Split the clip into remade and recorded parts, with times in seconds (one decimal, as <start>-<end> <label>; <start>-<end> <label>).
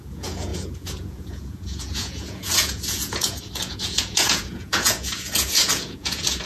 0.0-6.5 remade